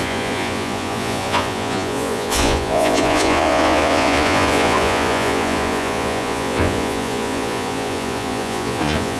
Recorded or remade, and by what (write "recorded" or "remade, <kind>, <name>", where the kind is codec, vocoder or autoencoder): remade, vocoder, Vocos